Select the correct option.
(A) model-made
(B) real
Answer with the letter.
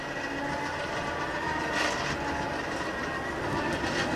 B